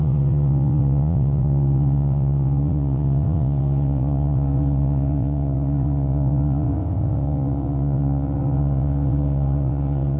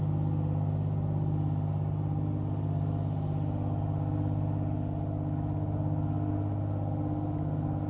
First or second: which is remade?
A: first